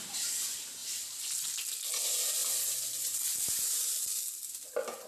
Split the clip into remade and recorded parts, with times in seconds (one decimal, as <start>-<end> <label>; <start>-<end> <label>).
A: 0.0-0.8 recorded; 0.8-1.4 remade; 1.4-2.4 recorded; 2.4-4.0 remade; 4.0-5.1 recorded